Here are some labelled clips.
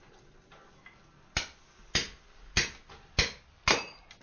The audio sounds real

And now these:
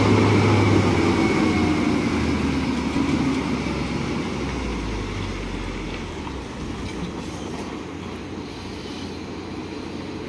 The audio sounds real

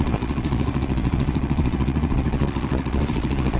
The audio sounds fake